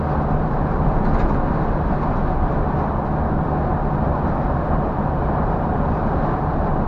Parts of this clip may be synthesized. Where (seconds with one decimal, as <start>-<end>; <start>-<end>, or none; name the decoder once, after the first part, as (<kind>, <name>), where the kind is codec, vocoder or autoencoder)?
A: 3.7-6.4 (vocoder, BigVGAN v2)